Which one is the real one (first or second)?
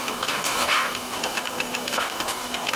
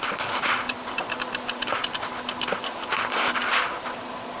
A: second